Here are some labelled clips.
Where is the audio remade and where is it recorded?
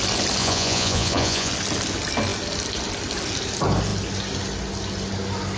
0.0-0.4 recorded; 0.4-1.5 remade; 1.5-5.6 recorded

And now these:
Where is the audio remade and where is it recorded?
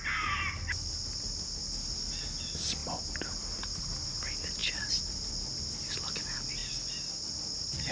0.0-7.9 recorded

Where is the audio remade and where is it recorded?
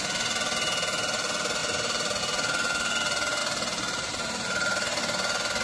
0.0-1.6 recorded; 1.6-2.2 remade; 2.2-3.4 recorded; 3.4-5.0 remade; 5.0-5.6 recorded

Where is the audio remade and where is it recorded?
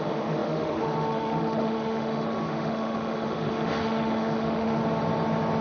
0.0-4.8 remade; 4.8-5.6 recorded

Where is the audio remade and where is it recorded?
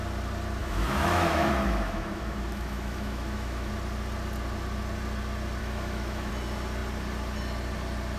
0.0-0.6 recorded; 0.6-3.7 remade; 3.7-5.6 recorded; 5.6-6.3 remade; 6.3-8.2 recorded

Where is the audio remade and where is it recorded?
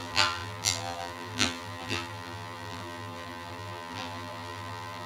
0.0-5.1 remade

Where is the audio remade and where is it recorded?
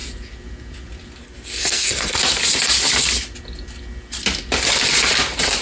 0.0-1.2 recorded; 1.2-2.2 remade; 2.2-5.6 recorded